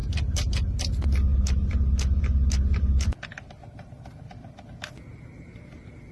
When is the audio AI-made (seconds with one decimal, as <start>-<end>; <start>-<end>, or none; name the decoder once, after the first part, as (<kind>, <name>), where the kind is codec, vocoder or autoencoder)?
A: 0.0-0.5 (vocoder, BigVGAN v2); 1.3-4.2